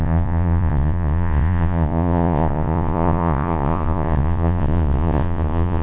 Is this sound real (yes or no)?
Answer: no